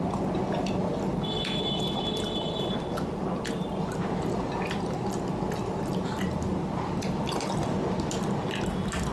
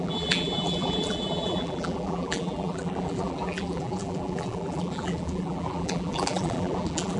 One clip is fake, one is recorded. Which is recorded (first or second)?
first